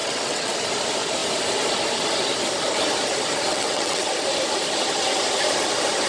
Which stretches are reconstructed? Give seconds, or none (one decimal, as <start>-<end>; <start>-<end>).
0.0-0.5; 3.5-4.1